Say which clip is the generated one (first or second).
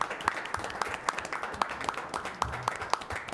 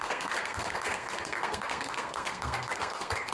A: second